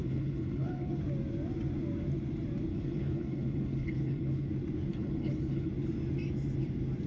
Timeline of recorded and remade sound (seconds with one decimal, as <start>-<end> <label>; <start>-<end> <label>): 0.0-1.0 remade; 1.0-2.7 recorded; 2.7-4.5 remade; 4.5-4.9 recorded; 4.9-5.7 remade; 5.7-7.1 recorded